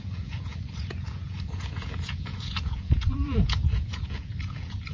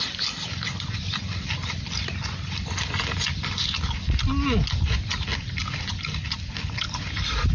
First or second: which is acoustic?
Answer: second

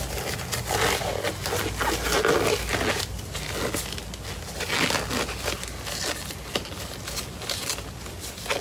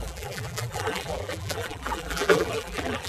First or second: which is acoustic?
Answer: first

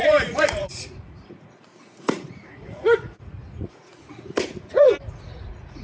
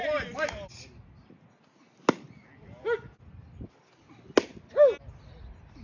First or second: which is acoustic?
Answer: second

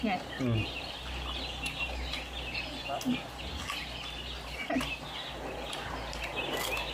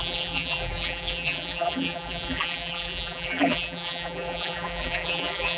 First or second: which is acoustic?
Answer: first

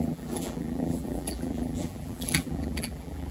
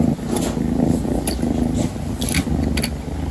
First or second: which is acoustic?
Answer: second